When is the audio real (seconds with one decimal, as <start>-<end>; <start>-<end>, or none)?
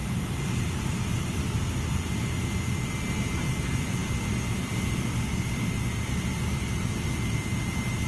0.0-8.1